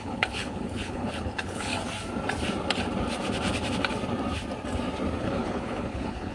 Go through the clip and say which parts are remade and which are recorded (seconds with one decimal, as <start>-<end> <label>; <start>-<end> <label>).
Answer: 0.0-1.7 remade; 1.7-5.2 recorded; 5.2-6.3 remade